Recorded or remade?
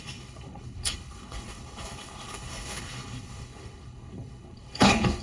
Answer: remade